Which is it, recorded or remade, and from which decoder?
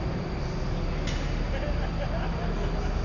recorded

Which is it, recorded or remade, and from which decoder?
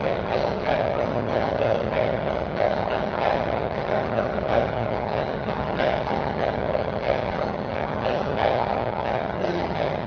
remade, vocoder, HiFi-GAN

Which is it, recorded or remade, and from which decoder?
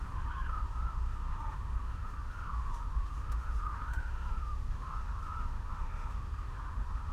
remade, autoencoder, DAC-VAE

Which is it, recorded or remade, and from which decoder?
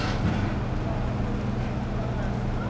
recorded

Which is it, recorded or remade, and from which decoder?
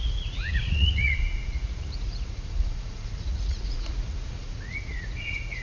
remade, vocoder, Vocos